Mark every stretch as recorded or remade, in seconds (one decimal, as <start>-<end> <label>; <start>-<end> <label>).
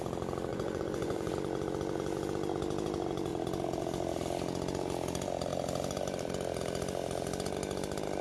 0.0-0.5 recorded; 0.5-1.3 remade; 1.3-8.2 recorded